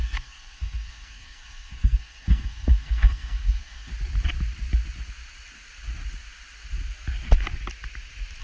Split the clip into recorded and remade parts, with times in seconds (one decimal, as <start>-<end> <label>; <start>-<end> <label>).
0.0-3.9 remade; 3.9-8.4 recorded